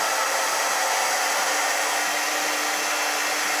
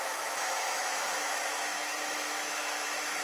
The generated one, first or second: second